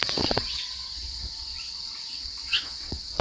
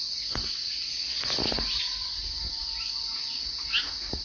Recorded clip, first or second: second